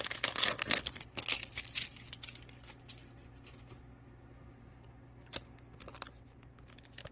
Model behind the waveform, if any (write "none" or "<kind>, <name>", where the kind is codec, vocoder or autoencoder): none